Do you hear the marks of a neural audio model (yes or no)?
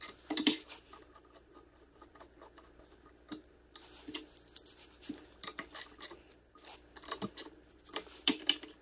yes